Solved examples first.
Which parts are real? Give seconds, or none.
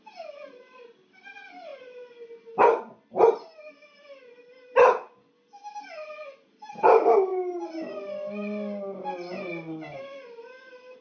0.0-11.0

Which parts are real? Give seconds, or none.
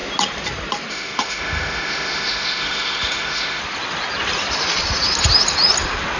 0.0-0.9; 3.6-6.2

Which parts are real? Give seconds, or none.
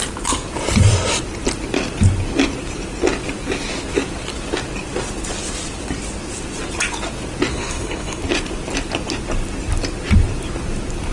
0.0-7.5; 8.2-11.1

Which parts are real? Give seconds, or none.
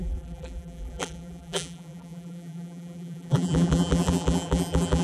none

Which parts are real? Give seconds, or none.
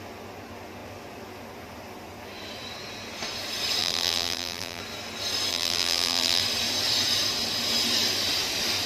0.0-3.8; 4.8-5.5; 6.4-8.9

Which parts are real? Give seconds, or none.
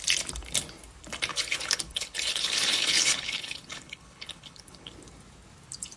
0.0-1.3; 4.9-6.0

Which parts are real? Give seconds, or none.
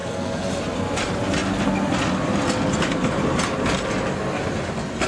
0.6-5.1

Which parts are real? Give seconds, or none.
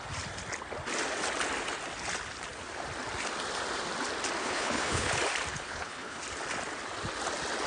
0.0-4.4; 5.1-5.5; 6.2-7.7